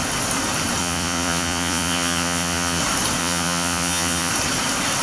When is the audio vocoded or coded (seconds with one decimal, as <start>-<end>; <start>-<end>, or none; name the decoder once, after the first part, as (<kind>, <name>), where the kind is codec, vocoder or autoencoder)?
0.8-2.8 (vocoder, Vocos); 3.2-4.3